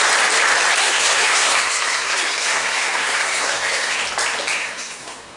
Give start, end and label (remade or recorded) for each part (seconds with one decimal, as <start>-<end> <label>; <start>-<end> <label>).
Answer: 0.0-0.8 recorded; 0.8-4.0 remade; 4.0-4.6 recorded; 4.6-5.4 remade

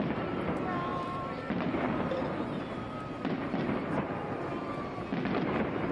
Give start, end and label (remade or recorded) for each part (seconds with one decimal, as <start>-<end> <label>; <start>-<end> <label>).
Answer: 0.0-0.9 recorded; 0.9-2.6 remade; 2.6-5.9 recorded

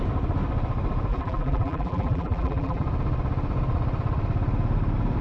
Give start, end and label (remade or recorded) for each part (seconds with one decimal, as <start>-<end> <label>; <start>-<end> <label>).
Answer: 0.0-1.1 recorded; 1.1-2.8 remade; 2.8-5.2 recorded

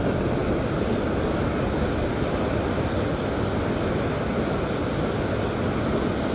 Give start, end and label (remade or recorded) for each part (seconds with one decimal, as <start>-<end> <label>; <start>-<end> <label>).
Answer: 0.0-6.3 recorded

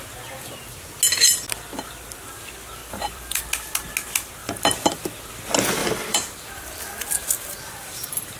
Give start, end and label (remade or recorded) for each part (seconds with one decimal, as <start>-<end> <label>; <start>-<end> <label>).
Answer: 0.0-2.8 recorded; 2.8-3.4 remade; 3.4-4.4 recorded; 4.4-5.0 remade; 5.0-5.8 recorded; 5.8-8.4 remade

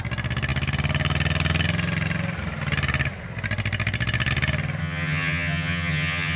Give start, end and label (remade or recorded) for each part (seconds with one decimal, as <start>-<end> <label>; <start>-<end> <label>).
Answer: 0.0-4.8 recorded; 4.8-6.4 remade

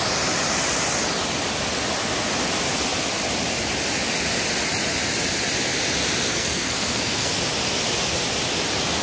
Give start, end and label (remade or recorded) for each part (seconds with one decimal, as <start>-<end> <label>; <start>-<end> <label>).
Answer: 0.0-6.3 recorded; 6.3-7.4 remade; 7.4-9.0 recorded

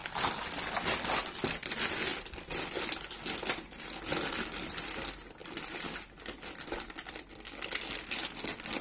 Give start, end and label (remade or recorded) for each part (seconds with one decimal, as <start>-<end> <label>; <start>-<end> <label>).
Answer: 0.0-8.8 recorded